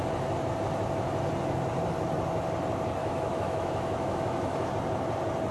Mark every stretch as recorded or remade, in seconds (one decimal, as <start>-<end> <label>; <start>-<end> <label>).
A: 0.0-3.0 recorded; 3.0-4.7 remade; 4.7-5.5 recorded